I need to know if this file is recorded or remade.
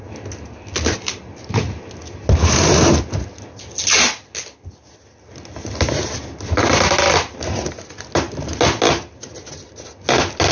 recorded